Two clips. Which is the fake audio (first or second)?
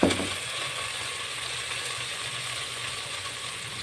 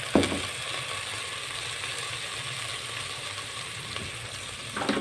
first